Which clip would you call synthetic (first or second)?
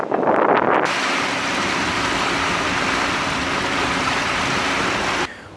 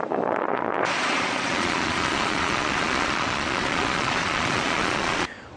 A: second